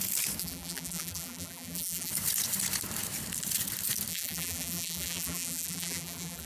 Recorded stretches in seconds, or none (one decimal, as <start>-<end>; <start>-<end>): 0.0-0.4; 2.1-4.1